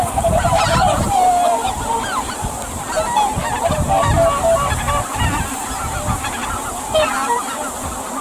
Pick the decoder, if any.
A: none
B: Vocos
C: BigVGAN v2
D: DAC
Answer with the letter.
A